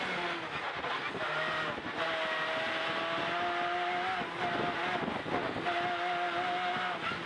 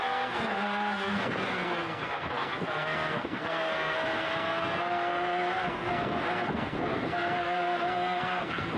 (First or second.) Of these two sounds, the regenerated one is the second